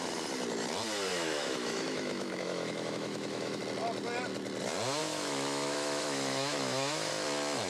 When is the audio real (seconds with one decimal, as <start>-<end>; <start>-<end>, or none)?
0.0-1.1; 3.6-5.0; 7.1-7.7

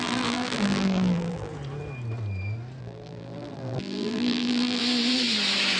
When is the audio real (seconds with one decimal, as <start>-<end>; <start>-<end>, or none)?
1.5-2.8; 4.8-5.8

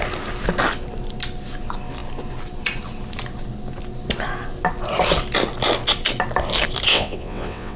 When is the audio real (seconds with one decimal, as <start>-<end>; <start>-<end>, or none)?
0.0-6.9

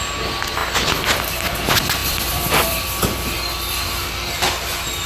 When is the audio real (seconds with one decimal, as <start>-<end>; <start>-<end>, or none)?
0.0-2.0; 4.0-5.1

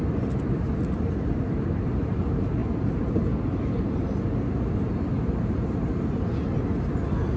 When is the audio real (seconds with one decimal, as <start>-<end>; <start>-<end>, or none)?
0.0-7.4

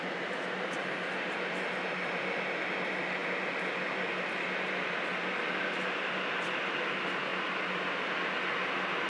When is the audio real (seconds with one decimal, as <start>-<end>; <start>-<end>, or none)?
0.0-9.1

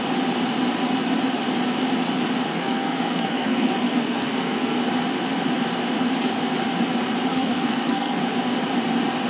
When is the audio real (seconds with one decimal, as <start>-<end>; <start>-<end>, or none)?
0.0-2.5; 4.8-7.3; 8.2-9.3